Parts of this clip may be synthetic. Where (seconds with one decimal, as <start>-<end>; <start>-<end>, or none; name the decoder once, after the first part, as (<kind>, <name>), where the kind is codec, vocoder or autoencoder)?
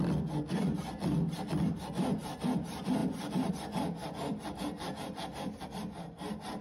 none